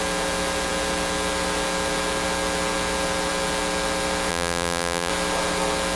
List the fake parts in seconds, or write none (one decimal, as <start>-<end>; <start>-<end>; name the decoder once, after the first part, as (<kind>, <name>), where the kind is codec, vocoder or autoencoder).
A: 4.3-5.1 (vocoder, BigVGAN v2)